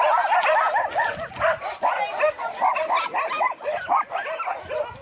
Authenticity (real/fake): real